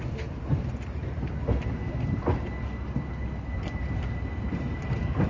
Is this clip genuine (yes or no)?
yes